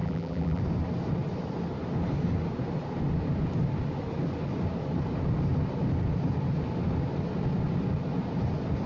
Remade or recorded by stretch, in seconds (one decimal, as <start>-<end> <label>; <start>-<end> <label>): 0.0-0.6 remade; 0.6-8.9 recorded